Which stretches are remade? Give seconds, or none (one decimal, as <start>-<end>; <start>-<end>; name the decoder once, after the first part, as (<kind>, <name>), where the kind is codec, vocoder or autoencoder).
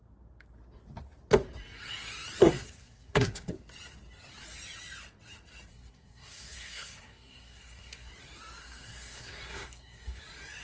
2.4-3.5 (codec, SNAC); 5.7-8.1; 8.6-10.2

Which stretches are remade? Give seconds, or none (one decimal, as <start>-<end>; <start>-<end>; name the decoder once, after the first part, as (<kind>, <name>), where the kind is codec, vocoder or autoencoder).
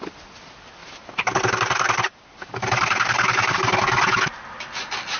0.8-3.5 (vocoder, BigVGAN v2)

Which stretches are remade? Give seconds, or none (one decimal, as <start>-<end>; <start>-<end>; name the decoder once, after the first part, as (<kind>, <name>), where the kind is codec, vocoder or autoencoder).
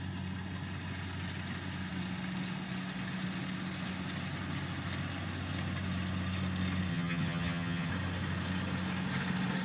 6.9-7.9 (vocoder, HiFi-GAN)